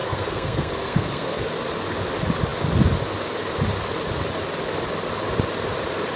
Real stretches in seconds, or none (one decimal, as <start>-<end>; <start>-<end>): 1.5-6.2